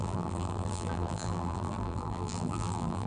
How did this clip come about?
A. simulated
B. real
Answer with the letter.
A